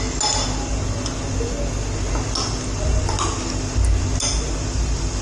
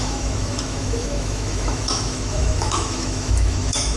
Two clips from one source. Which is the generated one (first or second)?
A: second